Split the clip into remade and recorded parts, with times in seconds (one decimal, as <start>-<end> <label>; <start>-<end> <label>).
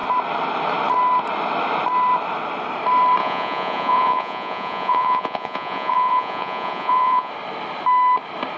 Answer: 0.0-3.2 recorded; 3.2-7.3 remade; 7.3-8.6 recorded